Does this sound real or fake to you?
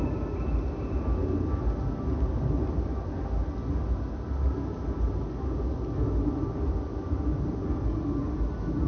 real